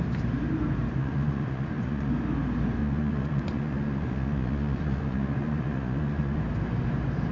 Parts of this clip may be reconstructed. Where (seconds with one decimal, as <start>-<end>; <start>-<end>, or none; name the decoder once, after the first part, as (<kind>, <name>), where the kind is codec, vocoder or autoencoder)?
1.0-2.1 (vocoder, Vocos); 2.8-6.4